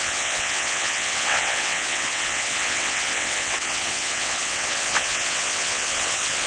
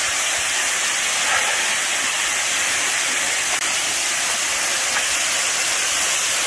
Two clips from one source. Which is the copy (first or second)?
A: first